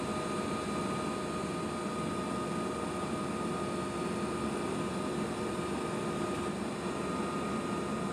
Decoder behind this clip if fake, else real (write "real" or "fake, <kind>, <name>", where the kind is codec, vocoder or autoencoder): real